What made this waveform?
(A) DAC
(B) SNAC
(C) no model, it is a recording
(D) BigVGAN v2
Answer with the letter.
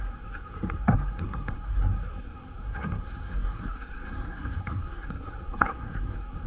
B